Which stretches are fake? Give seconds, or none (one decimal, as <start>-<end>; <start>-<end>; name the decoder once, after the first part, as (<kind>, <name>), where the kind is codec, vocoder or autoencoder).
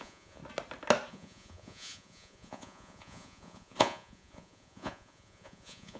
0.0-0.4 (vocoder, Vocos); 1.1-6.0